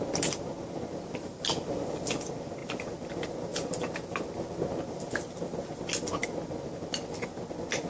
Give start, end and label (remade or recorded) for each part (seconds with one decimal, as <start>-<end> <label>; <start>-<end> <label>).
0.0-3.5 recorded; 3.5-4.5 remade; 4.5-7.9 recorded